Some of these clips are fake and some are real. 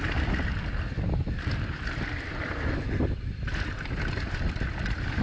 real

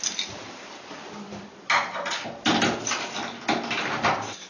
real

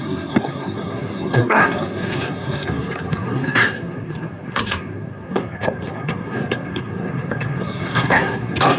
fake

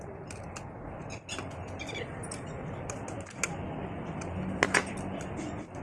real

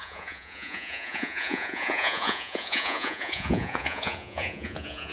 fake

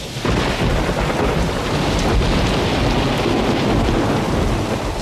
real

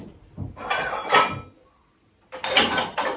real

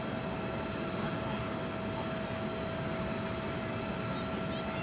real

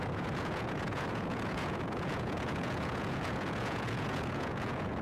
fake